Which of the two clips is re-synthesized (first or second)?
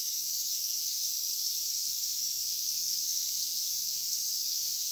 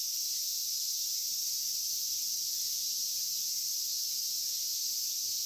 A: first